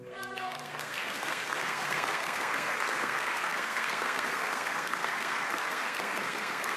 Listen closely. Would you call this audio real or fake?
fake